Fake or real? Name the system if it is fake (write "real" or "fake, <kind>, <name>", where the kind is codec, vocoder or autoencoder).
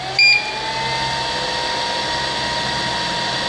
real